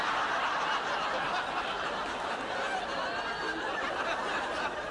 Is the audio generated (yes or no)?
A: no